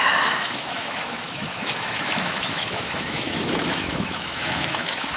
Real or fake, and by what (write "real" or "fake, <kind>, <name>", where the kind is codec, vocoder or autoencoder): fake, autoencoder, DAC-VAE